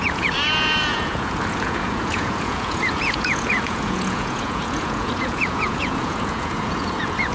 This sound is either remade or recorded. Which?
remade